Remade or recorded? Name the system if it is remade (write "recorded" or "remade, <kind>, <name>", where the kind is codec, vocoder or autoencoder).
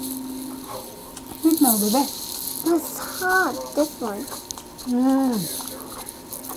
recorded